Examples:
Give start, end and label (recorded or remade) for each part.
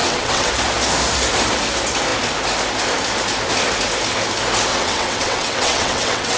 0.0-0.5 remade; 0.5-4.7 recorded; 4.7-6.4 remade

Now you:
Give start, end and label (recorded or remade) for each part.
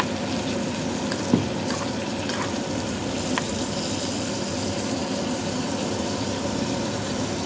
0.0-7.5 recorded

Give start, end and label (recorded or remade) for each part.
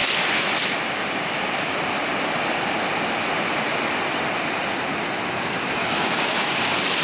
0.0-5.8 recorded; 5.8-6.6 remade; 6.6-7.0 recorded